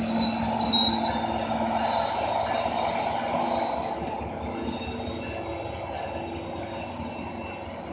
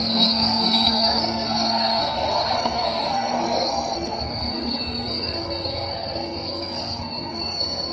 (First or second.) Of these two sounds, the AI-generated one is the second